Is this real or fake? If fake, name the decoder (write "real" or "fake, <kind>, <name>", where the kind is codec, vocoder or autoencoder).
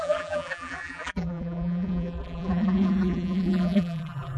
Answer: fake, vocoder, BigVGAN v2